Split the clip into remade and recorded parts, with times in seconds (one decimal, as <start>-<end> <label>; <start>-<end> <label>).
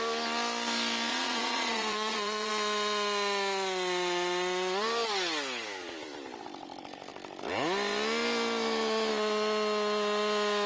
0.0-1.1 recorded; 1.1-2.5 remade; 2.5-10.7 recorded